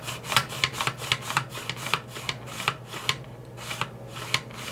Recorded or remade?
recorded